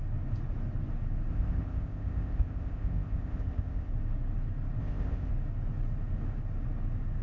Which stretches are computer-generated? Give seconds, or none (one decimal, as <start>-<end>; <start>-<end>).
1.3-3.9; 4.8-5.3